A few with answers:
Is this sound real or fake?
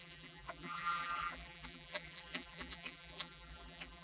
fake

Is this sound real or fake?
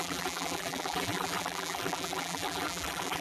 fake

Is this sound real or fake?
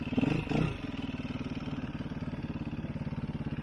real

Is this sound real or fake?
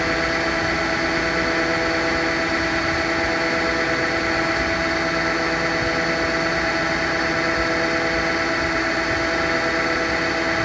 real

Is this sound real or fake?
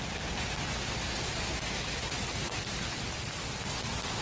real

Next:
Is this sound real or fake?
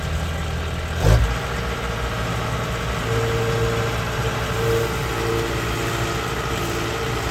real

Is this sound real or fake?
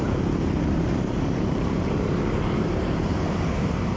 fake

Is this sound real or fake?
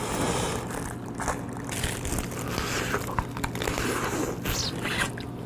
real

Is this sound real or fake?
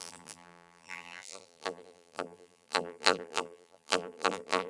fake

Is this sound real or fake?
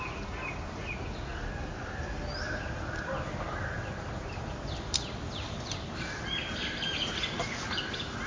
fake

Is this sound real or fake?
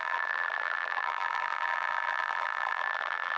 fake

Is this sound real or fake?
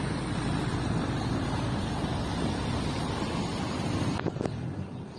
fake